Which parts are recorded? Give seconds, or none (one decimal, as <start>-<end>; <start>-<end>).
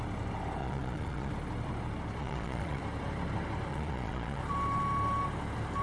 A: 0.0-0.6; 1.3-2.2; 2.8-3.7; 4.4-5.8